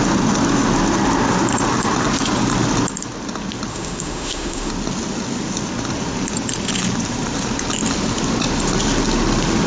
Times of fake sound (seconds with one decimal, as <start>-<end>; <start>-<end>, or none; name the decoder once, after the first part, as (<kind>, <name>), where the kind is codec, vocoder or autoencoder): 3.7-4.7 (autoencoder, DAC-VAE)